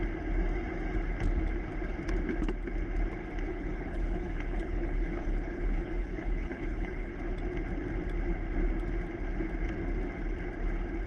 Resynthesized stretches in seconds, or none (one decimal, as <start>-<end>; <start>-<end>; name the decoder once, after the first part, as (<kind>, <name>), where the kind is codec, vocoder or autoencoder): 3.5-7.1 (codec, HILCodec)